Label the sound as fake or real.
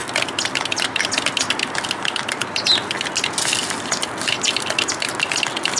real